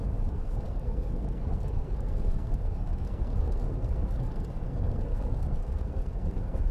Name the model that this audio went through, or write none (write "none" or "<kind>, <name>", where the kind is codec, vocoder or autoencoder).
codec, SNAC